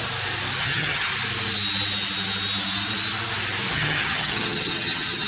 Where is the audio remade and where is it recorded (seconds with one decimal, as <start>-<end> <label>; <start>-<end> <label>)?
0.0-0.6 recorded; 0.6-1.1 remade; 1.1-3.7 recorded; 3.7-5.3 remade